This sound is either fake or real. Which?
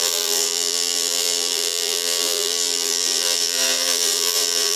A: fake